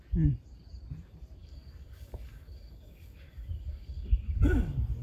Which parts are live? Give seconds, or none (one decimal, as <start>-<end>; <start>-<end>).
0.0-1.4; 4.4-5.0